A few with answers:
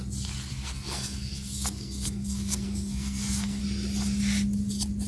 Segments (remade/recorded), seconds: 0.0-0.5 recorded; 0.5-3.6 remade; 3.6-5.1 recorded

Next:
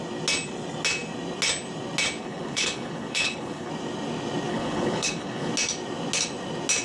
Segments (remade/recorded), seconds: 0.0-2.2 recorded; 2.2-3.7 remade; 3.7-4.5 recorded; 4.5-5.5 remade; 5.5-6.8 recorded